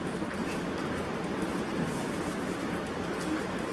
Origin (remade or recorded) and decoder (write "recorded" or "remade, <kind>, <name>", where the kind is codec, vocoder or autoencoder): recorded